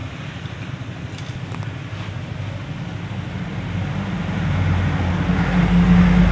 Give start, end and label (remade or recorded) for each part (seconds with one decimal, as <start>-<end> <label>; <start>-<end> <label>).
0.0-6.3 recorded